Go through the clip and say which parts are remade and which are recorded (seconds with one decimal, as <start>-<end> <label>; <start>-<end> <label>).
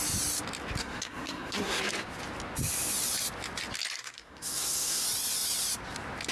0.0-0.8 recorded; 0.8-1.8 remade; 1.8-4.0 recorded; 4.0-5.0 remade; 5.0-6.3 recorded